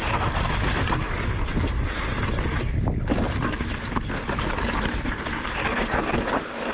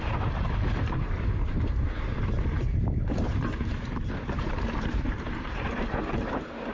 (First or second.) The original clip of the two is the first